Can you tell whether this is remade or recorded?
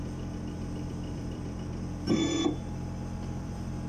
remade